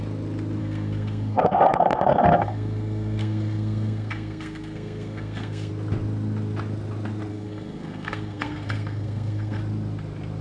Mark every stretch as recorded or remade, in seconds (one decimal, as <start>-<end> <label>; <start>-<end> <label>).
0.0-0.6 recorded; 0.6-5.7 remade; 5.7-7.3 recorded; 7.3-9.6 remade; 9.6-10.4 recorded